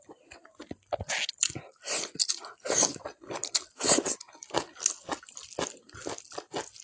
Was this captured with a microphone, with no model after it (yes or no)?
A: yes